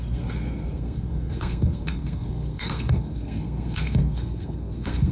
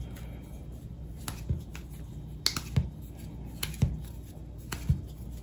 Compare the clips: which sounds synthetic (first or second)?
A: first